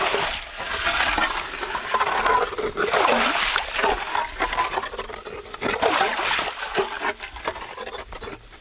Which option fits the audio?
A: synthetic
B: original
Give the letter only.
B